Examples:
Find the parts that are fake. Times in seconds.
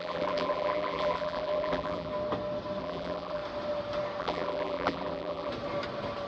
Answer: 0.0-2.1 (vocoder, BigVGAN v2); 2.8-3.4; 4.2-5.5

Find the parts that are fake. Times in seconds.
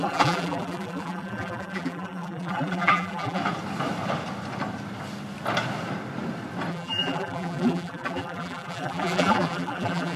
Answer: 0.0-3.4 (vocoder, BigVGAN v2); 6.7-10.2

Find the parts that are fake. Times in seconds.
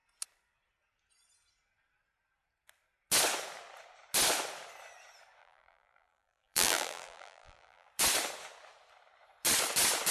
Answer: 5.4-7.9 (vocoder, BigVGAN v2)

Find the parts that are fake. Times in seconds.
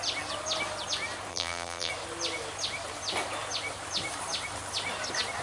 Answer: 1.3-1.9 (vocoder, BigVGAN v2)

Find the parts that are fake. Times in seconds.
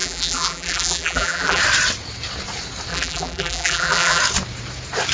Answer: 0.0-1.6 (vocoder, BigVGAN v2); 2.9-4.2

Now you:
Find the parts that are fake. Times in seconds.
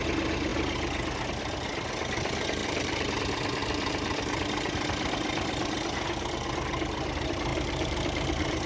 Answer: 2.6-3.2 (vocoder, BigVGAN v2); 3.6-4.3; 7.5-8.7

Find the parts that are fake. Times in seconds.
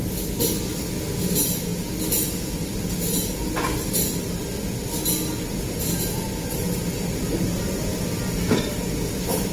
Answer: none